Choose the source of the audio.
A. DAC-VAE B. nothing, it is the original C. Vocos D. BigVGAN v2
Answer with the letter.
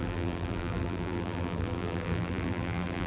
D